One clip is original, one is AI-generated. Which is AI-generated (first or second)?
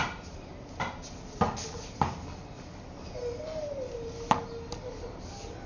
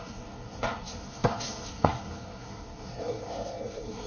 second